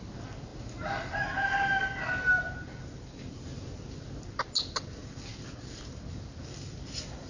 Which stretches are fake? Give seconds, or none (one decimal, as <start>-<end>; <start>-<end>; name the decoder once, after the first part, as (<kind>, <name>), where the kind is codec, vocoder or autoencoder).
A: none